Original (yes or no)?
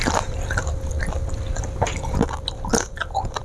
yes